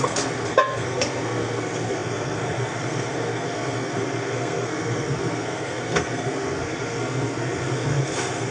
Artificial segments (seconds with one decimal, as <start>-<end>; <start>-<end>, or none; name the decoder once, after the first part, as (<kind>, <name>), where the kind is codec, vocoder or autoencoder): 0.0-8.5 (codec, SNAC)